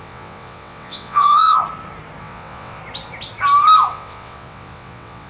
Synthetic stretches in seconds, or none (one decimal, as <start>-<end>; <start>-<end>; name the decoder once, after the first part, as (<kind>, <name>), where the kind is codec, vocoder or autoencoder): 0.0-1.6 (vocoder, WaveNeXt); 2.2-2.8; 3.9-5.3

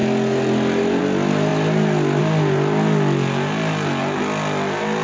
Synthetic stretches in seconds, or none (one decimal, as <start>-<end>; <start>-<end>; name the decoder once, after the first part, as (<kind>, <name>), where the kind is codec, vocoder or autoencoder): none

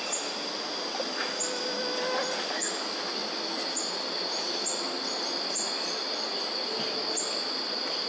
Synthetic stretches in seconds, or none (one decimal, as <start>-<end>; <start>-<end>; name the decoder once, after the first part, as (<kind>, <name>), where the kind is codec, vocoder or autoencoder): none

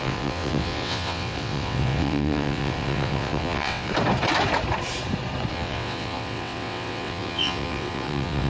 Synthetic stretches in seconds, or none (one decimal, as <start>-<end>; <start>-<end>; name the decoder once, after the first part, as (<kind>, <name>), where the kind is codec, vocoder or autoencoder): 0.0-3.9 (vocoder, WaveNeXt); 5.5-8.5

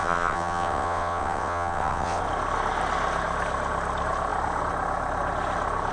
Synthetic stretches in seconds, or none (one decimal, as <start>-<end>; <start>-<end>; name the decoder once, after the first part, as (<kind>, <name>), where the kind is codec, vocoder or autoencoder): 0.0-2.2 (vocoder, WaveNeXt)